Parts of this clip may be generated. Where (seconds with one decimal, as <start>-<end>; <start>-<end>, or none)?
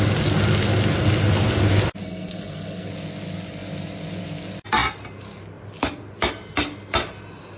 2.0-2.9